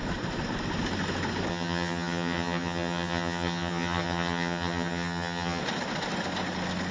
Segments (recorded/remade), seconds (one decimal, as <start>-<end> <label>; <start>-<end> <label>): 0.0-1.5 recorded; 1.5-5.6 remade; 5.6-6.9 recorded